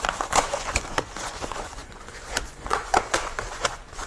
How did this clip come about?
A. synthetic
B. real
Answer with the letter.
A